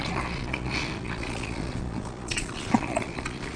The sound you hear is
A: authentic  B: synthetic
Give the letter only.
B